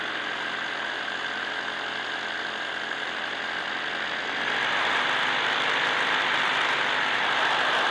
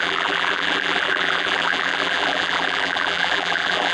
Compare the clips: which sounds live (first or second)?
first